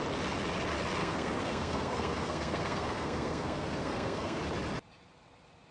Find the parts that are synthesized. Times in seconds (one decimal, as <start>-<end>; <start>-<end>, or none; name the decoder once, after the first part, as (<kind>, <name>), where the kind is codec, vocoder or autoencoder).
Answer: 1.0-4.4 (codec, SNAC)

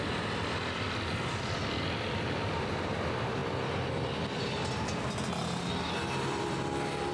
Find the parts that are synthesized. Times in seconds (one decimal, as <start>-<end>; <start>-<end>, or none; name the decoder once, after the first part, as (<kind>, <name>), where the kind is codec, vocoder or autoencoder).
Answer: none

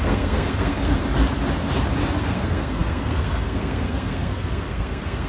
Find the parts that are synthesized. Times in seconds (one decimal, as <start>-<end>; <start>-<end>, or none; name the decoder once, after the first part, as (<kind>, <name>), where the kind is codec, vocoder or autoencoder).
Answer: 0.0-1.0 (codec, SNAC); 2.2-5.3